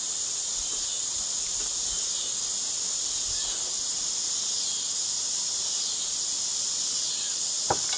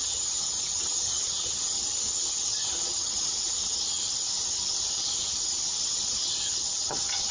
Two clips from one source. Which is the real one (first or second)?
first